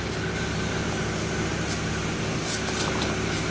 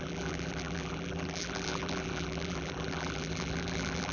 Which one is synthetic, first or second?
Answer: second